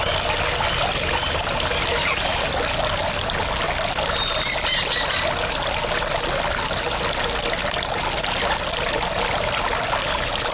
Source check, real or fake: real